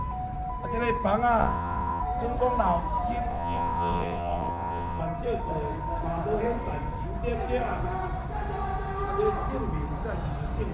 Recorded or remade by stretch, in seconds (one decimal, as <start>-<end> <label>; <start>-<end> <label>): 0.0-1.4 recorded; 1.4-2.0 remade; 2.0-3.3 recorded; 3.3-5.0 remade; 5.0-10.7 recorded